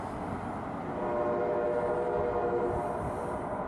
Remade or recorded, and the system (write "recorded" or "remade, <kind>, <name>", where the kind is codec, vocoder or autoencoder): recorded